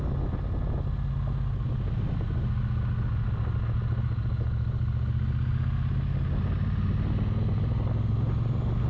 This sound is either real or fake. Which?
real